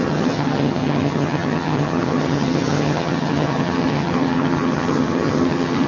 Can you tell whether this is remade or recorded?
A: remade